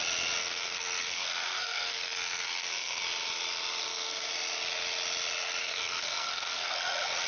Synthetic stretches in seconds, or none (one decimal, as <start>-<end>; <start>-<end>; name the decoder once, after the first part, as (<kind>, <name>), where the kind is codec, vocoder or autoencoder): 0.4-3.0 (codec, SNAC); 3.8-4.3; 5.6-6.7